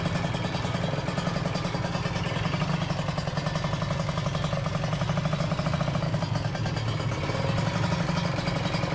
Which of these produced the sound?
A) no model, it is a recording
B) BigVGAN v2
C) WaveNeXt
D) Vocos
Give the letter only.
A